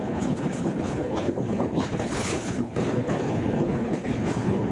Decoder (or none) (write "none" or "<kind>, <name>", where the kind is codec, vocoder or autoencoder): codec, HILCodec